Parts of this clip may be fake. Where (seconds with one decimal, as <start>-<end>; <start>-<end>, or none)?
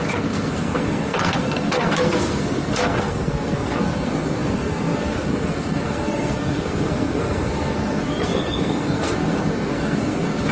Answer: 0.0-10.5